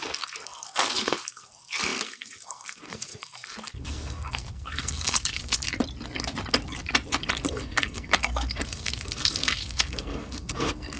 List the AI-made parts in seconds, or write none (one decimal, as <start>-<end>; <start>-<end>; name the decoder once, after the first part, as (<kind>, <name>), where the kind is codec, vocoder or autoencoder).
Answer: 0.0-5.6 (codec, SNAC); 7.5-11.0